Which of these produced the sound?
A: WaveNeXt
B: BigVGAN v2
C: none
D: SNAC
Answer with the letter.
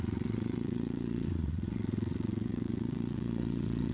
A